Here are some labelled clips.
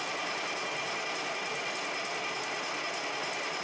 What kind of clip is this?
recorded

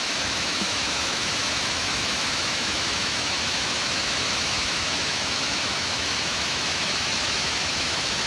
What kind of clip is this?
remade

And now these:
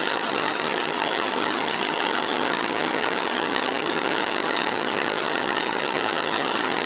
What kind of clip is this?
remade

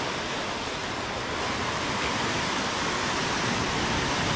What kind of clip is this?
recorded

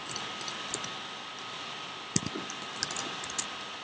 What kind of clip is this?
recorded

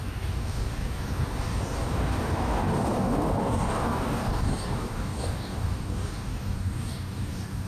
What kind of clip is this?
remade